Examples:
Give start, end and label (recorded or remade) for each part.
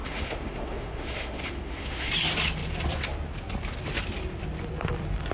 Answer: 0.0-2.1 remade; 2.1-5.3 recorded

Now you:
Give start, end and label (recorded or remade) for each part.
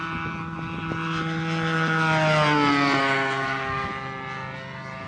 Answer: 0.0-3.0 recorded; 3.0-3.9 remade; 3.9-5.1 recorded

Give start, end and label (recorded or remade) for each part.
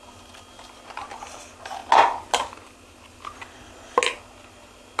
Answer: 0.0-5.0 recorded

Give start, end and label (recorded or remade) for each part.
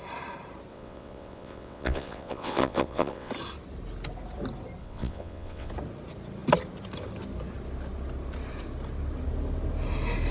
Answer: 0.0-0.7 recorded; 0.7-3.3 remade; 3.3-4.8 recorded; 4.8-5.7 remade; 5.7-10.3 recorded